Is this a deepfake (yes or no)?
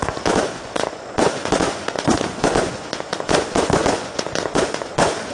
yes